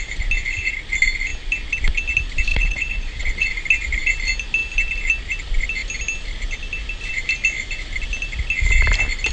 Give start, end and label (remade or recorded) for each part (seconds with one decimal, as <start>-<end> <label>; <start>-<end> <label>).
0.0-2.5 recorded; 2.5-3.5 remade; 3.5-9.3 recorded